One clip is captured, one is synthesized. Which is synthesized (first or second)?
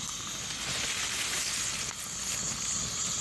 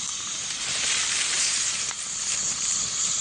second